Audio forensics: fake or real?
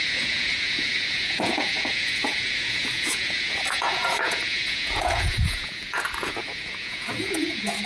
fake